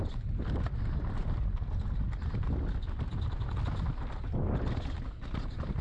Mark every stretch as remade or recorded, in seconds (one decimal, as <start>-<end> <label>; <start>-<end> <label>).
0.0-5.8 recorded